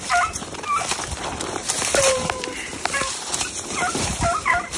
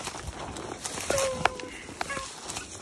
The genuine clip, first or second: second